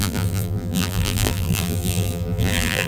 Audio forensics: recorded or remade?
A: remade